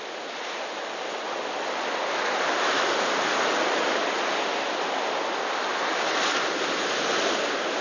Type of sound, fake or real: real